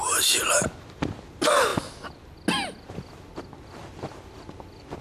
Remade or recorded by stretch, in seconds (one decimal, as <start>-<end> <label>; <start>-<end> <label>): 0.0-1.0 remade; 1.0-5.0 recorded